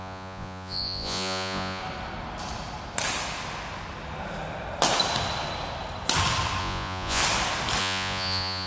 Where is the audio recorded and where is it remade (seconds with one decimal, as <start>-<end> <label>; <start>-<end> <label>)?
0.0-1.8 remade; 1.8-6.6 recorded; 6.6-7.2 remade; 7.2-7.8 recorded; 7.8-8.7 remade